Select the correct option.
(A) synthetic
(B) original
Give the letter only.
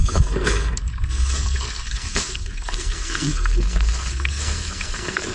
A